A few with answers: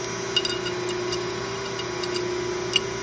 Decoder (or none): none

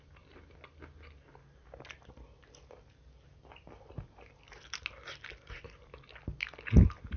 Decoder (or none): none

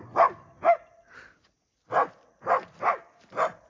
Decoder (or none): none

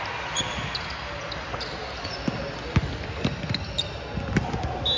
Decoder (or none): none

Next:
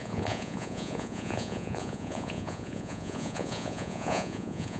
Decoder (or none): vocoder, Vocos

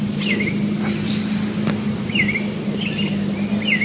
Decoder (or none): none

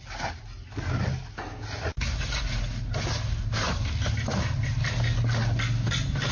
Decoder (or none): none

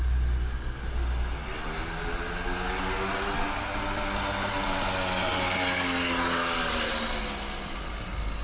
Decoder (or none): none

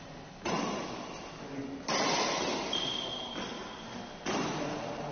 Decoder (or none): none